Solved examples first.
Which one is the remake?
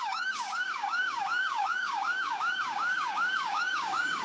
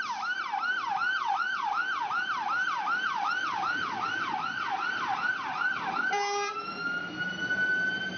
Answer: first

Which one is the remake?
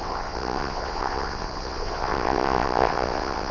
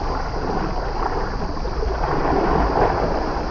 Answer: first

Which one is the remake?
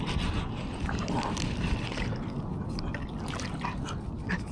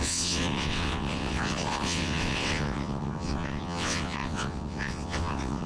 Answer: second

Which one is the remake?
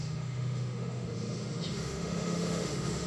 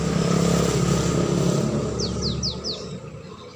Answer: first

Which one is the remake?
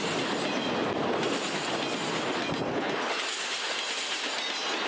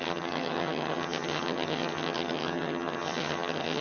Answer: second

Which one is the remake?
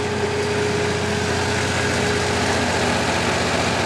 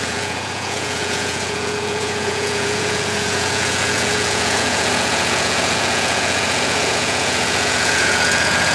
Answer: second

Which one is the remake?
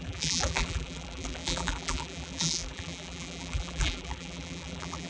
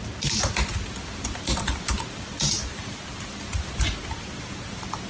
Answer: first